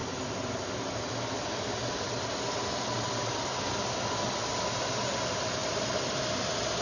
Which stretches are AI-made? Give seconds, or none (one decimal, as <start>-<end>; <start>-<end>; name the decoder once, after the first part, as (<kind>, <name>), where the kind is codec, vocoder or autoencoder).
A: none